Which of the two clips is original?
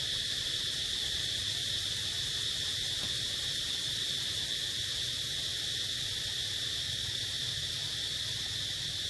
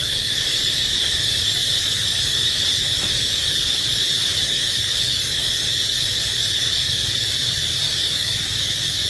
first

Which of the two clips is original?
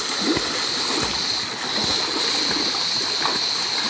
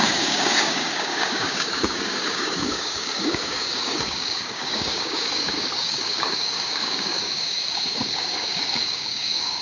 first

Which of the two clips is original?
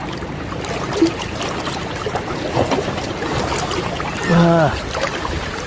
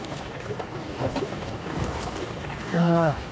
first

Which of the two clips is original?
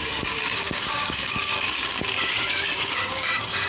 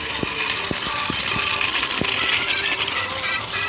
second